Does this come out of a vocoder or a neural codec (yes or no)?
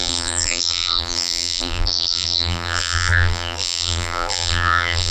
yes